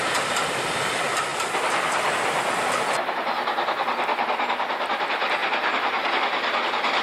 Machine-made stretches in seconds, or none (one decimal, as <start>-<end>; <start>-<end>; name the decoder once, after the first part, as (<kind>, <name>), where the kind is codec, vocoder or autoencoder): 5.4-6.1 (vocoder, BigVGAN v2)